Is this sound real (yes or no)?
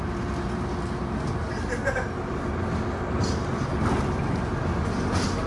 yes